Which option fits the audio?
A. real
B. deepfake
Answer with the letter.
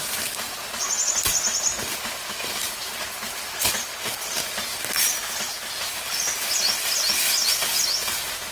A